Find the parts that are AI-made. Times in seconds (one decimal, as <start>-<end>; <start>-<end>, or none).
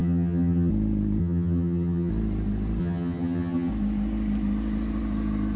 0.0-0.7; 1.2-2.1; 2.8-3.7